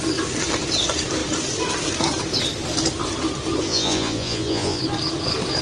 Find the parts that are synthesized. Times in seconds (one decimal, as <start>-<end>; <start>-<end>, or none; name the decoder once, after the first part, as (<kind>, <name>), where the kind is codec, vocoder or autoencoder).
3.7-4.8 (vocoder, Vocos)